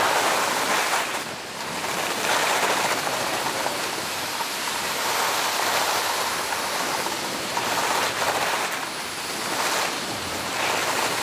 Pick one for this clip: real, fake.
real